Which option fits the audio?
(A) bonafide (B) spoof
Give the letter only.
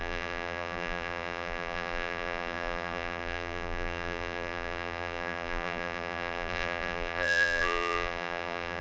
B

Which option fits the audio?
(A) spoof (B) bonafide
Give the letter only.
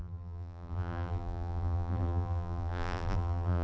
A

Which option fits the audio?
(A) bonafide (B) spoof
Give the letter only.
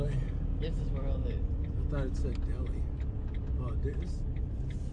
A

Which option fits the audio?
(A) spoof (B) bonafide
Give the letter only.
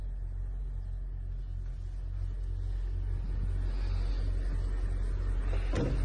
B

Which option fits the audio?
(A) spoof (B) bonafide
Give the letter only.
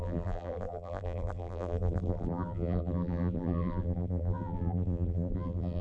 A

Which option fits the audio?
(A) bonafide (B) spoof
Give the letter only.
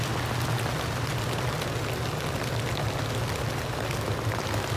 A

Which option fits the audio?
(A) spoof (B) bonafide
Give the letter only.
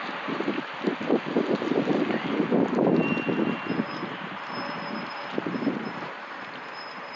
A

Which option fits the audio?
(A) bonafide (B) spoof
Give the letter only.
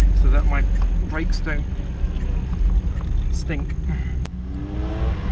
A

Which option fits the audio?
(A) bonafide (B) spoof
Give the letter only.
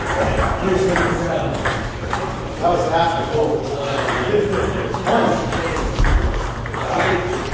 B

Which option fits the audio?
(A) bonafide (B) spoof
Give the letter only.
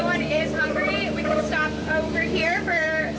B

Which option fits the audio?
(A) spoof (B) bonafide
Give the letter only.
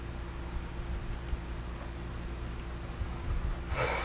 B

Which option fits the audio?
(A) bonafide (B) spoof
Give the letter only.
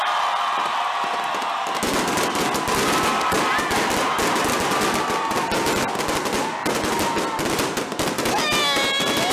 A